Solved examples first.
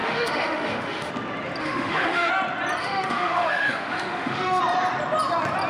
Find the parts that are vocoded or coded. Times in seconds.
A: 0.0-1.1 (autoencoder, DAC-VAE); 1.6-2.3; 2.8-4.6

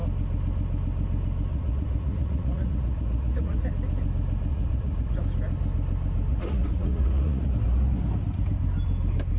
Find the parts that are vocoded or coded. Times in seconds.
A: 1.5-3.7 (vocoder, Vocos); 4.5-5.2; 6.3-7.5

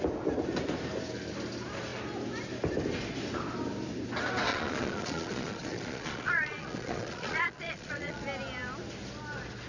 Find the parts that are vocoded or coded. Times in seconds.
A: 4.5-8.2 (vocoder, Vocos)

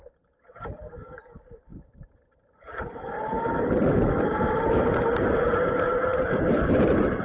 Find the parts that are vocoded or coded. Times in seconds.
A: none

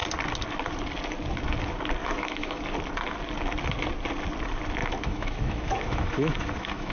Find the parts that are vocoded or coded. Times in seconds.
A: 2.0-2.6 (autoencoder, DAC-VAE); 4.8-6.9